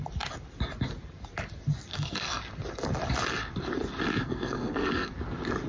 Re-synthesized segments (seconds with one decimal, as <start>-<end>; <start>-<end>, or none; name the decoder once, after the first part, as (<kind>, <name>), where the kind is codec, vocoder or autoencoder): 1.9-2.4 (codec, SNAC); 4.2-5.1